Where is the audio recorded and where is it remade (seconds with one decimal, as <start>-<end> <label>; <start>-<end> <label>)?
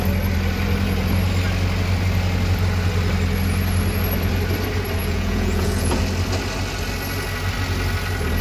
0.0-5.0 recorded; 5.0-6.0 remade; 6.0-8.4 recorded